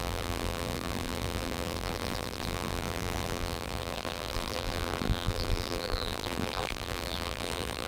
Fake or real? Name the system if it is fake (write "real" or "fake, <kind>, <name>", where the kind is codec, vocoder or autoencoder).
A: fake, vocoder, BigVGAN v2